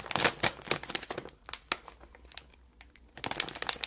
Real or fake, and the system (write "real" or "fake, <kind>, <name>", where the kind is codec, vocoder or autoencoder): real